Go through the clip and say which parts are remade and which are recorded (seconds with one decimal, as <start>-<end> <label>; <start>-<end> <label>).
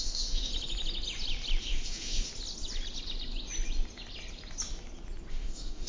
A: 0.0-0.5 remade; 0.5-1.6 recorded; 1.6-2.3 remade; 2.3-5.3 recorded; 5.3-5.9 remade